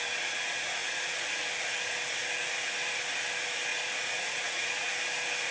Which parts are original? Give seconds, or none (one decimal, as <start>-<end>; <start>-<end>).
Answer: 0.0-0.8; 1.4-3.7; 4.9-5.5